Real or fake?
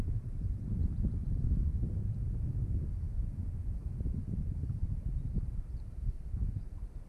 fake